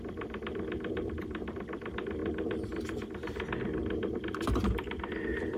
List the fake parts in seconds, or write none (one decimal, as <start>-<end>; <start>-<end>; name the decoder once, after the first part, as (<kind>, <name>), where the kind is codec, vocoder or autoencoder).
0.0-2.2 (vocoder, BigVGAN v2)

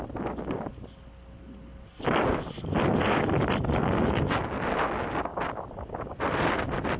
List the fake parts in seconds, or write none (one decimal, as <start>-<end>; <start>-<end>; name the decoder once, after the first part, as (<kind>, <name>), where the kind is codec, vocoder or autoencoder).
5.3-6.2 (vocoder, BigVGAN v2)